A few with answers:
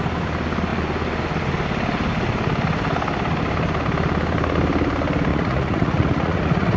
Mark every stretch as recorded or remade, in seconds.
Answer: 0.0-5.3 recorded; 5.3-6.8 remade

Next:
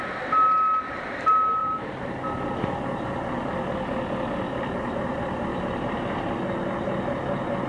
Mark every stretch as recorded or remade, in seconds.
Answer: 0.0-1.6 recorded; 1.6-2.3 remade; 2.3-5.5 recorded; 5.5-6.4 remade; 6.4-7.7 recorded

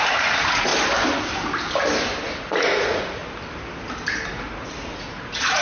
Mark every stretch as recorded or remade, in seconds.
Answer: 0.0-0.7 remade; 0.7-2.4 recorded; 2.4-3.2 remade; 3.2-4.3 recorded; 4.3-5.6 remade

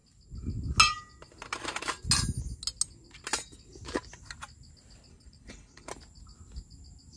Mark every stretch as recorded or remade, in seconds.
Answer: 0.0-5.1 recorded; 5.1-5.9 remade; 5.9-7.2 recorded

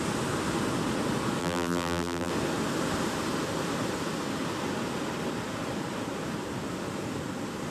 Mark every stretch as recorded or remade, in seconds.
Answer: 0.0-1.4 recorded; 1.4-2.3 remade; 2.3-7.7 recorded

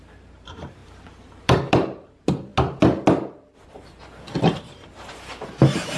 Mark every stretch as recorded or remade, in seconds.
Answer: 0.0-2.5 remade; 2.5-4.4 recorded; 4.4-6.0 remade

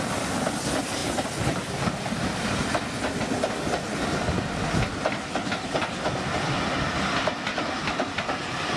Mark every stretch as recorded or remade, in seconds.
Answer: 0.0-8.8 recorded